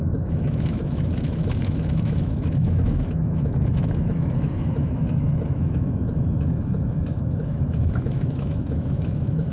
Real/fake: fake